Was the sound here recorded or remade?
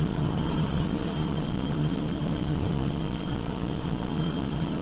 remade